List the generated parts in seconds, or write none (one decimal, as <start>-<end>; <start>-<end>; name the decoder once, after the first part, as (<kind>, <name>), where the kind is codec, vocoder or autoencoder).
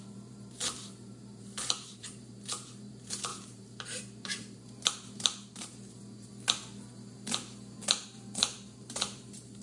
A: 0.0-6.3 (vocoder, BigVGAN v2); 7.9-9.6